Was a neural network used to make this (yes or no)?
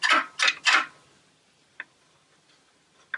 no